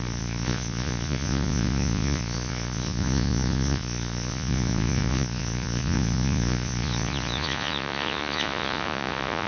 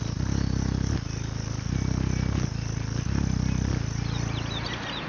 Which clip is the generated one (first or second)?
first